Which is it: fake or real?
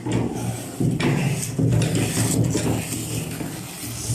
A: real